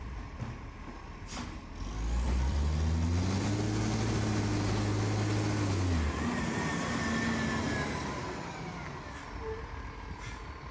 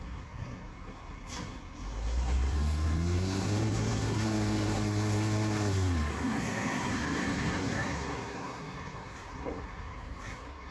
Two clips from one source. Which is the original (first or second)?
first